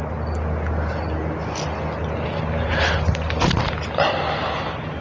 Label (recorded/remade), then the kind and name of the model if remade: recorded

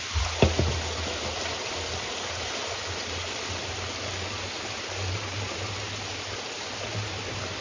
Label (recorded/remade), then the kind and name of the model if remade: recorded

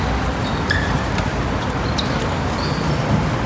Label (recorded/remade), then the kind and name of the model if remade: recorded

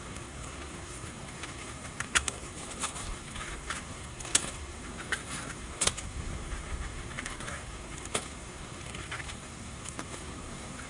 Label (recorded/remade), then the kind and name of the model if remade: remade, codec, SNAC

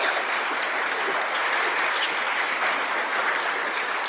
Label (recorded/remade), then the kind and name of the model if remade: recorded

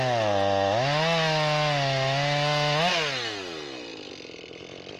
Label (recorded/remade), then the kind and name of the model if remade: recorded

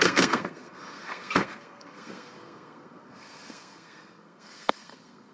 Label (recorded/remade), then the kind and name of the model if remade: remade, codec, SNAC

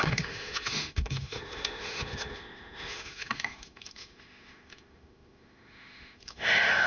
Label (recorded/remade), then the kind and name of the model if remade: remade, autoencoder, DAC-VAE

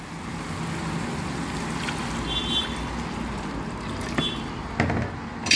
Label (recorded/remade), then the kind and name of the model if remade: recorded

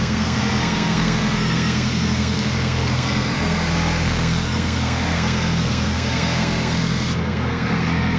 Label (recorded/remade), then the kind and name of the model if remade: remade, codec, SNAC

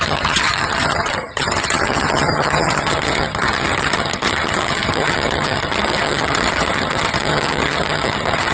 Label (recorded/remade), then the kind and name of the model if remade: remade, vocoder, HiFi-GAN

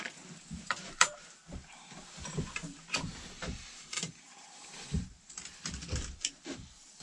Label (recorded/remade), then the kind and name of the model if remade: remade, vocoder, BigVGAN v2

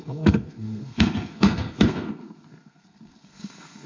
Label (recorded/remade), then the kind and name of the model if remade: remade, codec, SNAC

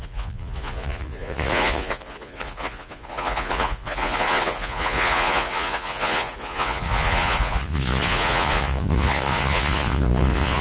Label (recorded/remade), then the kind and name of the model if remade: remade, vocoder, Vocos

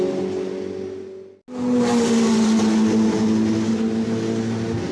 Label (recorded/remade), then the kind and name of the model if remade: recorded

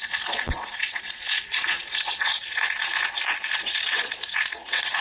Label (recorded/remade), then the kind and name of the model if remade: remade, vocoder, Vocos